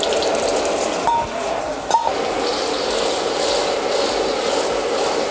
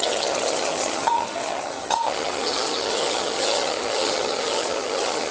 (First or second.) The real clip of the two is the first